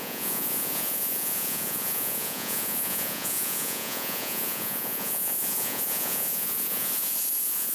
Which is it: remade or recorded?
remade